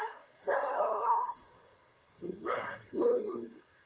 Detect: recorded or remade remade